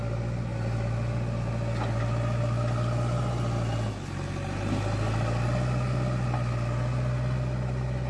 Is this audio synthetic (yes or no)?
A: no